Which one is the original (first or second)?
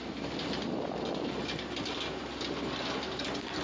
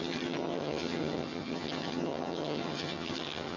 first